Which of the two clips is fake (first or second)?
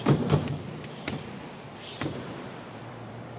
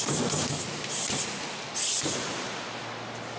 first